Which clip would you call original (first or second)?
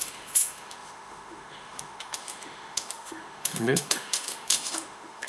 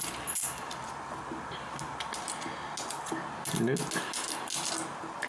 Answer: second